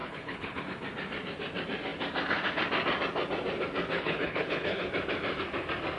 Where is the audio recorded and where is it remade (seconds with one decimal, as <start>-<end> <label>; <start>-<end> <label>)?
0.0-0.6 remade; 0.6-3.9 recorded; 3.9-4.9 remade; 4.9-6.0 recorded